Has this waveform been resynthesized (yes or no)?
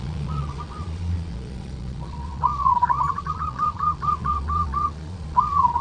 yes